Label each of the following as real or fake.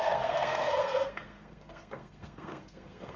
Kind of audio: fake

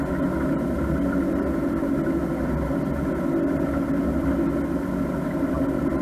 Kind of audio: real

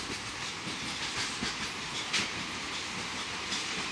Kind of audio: fake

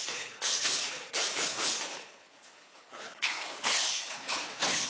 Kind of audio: fake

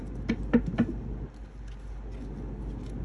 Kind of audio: real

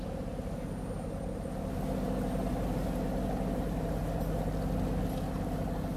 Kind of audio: real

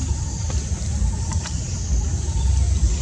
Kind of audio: real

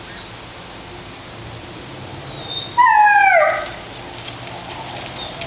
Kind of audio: real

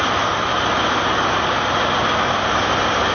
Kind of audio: real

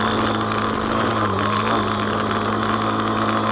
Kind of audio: real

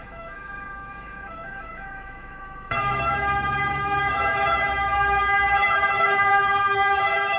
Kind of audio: fake